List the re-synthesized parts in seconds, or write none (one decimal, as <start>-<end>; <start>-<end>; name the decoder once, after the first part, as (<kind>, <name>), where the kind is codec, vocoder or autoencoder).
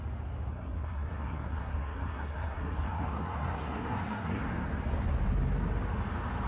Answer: 0.5-4.4 (codec, SNAC)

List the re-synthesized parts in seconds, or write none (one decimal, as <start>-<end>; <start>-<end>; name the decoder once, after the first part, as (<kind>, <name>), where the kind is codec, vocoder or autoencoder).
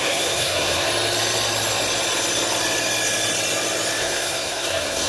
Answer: 0.0-0.9 (codec, SNAC); 4.0-5.1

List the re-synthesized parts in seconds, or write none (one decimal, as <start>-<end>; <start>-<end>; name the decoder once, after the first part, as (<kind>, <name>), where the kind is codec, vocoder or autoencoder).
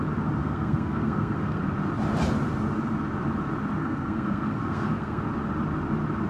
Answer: 0.4-1.6 (codec, SNAC); 3.8-5.2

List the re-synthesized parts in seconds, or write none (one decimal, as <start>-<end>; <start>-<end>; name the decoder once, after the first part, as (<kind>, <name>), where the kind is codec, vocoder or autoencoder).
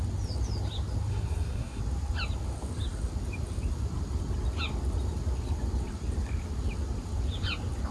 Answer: 1.1-1.8 (codec, SNAC)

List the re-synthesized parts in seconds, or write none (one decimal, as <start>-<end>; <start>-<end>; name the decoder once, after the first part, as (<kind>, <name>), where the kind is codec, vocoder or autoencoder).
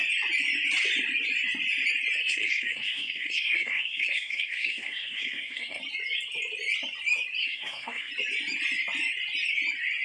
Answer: 2.2-5.8 (codec, SNAC); 7.4-8.1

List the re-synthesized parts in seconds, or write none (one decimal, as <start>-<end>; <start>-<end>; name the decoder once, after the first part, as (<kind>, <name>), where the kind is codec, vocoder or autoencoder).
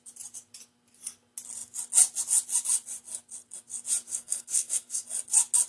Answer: 4.1-5.0 (codec, SNAC)